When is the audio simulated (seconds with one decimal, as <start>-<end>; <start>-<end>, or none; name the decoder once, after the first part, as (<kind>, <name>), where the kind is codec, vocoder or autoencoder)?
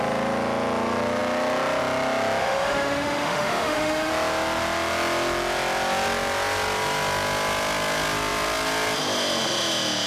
2.4-4.1 (autoencoder, DAC-VAE)